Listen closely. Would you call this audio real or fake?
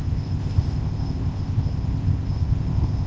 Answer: fake